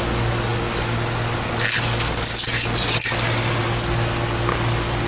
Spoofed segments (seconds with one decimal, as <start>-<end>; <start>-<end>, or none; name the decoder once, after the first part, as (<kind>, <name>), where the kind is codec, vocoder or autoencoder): none